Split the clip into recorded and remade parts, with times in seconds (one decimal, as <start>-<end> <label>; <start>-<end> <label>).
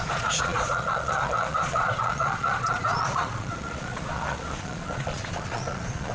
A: 0.0-6.1 remade